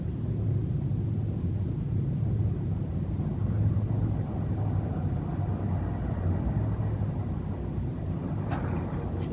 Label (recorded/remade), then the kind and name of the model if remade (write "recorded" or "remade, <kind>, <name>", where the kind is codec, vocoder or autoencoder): recorded